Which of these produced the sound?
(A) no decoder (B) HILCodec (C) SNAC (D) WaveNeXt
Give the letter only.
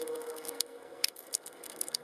C